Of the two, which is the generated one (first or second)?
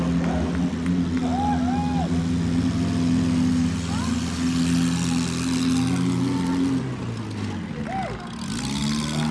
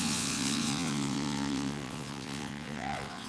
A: second